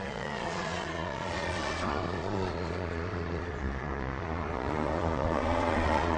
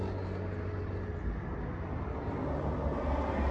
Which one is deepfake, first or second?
first